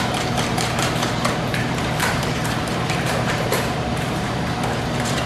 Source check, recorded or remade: remade